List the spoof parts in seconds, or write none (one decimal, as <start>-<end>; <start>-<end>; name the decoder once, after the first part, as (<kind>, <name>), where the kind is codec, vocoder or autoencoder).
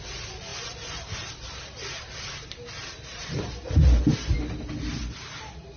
0.5-4.0 (vocoder, BigVGAN v2)